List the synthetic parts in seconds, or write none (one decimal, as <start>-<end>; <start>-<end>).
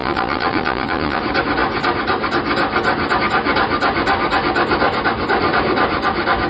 0.0-1.2